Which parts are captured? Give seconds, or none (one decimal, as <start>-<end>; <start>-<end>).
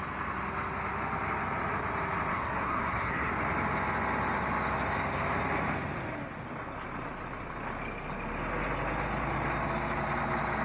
0.0-2.3; 3.3-10.6